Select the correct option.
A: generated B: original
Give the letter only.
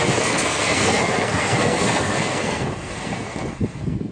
A